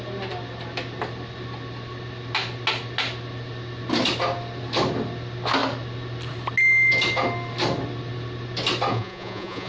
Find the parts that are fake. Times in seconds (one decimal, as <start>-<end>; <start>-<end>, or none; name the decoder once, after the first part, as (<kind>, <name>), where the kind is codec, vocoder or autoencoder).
8.9-9.7 (vocoder, Vocos)